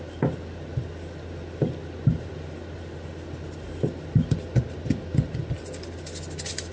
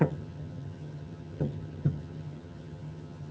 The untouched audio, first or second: first